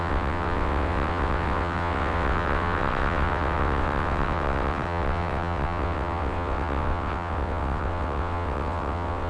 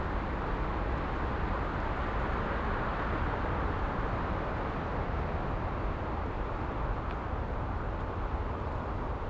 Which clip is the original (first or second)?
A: second